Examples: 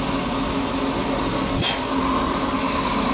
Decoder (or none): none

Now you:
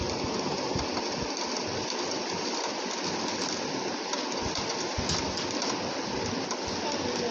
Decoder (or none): none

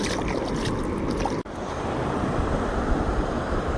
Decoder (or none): none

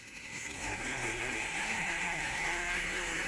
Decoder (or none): codec, SNAC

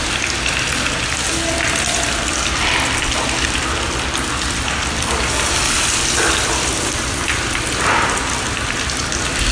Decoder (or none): none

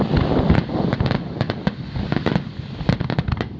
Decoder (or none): none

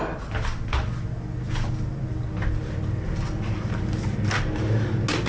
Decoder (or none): none